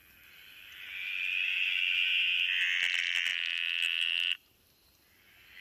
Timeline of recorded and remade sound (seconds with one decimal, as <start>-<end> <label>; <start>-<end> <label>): 0.0-5.6 recorded